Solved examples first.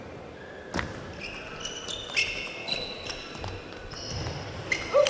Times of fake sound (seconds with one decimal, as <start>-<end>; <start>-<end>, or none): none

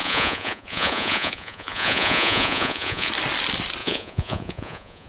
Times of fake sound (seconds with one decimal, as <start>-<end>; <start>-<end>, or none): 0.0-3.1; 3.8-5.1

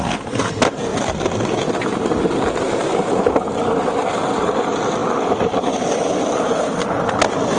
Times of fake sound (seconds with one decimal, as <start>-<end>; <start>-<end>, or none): none

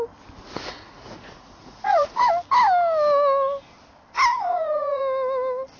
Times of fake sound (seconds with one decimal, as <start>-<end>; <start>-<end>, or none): 0.5-2.3; 4.3-5.0

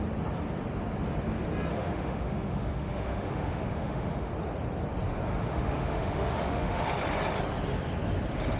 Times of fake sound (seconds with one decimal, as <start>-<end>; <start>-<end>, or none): 1.7-4.3; 5.3-6.8

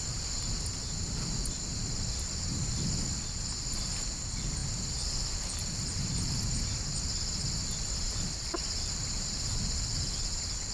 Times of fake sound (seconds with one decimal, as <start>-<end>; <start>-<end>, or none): 0.0-10.7